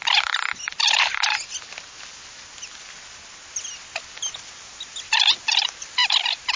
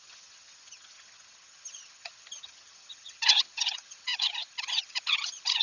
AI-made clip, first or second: second